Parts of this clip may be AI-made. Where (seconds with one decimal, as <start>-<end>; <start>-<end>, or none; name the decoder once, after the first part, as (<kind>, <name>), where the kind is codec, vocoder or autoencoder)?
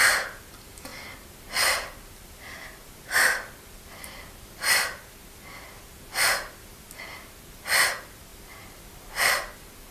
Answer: none